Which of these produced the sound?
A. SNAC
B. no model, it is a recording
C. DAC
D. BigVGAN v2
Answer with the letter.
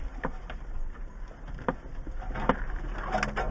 B